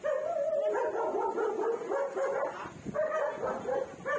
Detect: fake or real real